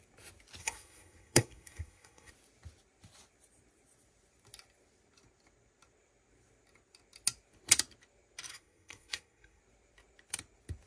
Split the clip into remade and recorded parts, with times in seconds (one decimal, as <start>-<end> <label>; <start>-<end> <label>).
0.0-0.6 recorded; 0.6-2.3 remade; 2.3-8.5 recorded; 8.5-9.6 remade; 9.6-10.9 recorded